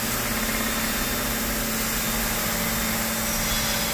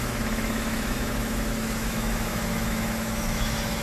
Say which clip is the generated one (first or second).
second